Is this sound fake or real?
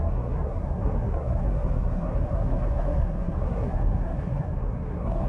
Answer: fake